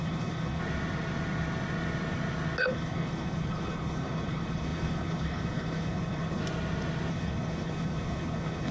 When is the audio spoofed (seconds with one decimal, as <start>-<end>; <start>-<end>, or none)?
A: 0.0-0.6; 2.6-6.4; 7.1-8.7